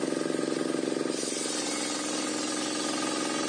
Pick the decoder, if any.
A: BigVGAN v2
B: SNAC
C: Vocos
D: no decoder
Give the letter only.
D